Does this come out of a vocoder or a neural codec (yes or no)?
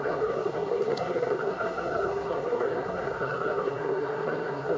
yes